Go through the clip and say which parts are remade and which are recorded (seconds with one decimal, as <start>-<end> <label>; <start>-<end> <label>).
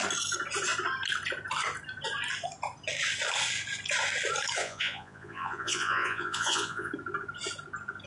0.0-4.6 recorded; 4.6-6.9 remade; 6.9-8.1 recorded